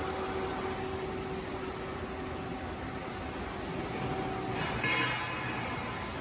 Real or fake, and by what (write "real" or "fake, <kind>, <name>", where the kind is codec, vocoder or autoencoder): real